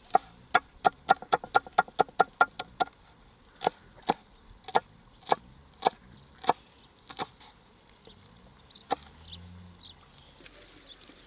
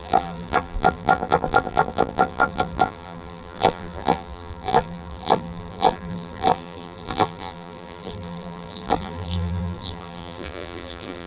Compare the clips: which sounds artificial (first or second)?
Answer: second